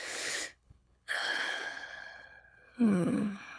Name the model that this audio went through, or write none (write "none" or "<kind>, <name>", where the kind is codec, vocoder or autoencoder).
codec, HILCodec